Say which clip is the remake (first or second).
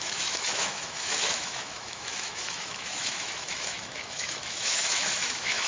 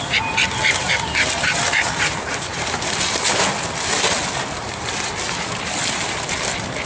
first